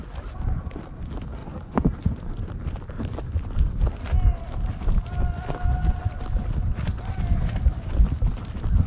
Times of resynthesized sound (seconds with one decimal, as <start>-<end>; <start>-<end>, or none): 1.4-2.4